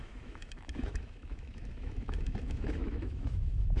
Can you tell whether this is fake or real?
fake